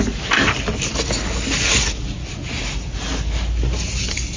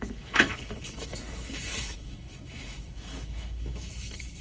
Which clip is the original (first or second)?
first